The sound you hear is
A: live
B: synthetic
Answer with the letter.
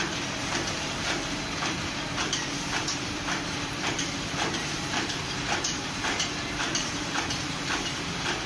B